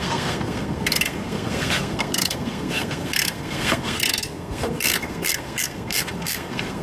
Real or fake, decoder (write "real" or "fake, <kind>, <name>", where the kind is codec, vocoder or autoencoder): fake, codec, SNAC